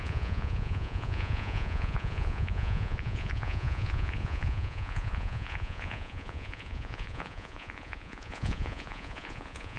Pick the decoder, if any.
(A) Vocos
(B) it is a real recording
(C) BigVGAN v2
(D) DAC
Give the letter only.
A